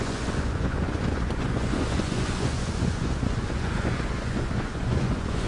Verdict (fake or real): fake